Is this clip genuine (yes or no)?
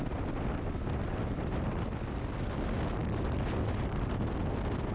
yes